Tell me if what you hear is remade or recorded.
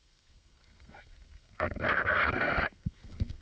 remade